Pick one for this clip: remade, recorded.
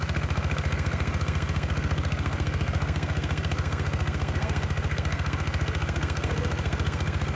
remade